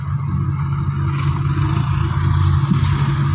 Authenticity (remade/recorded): recorded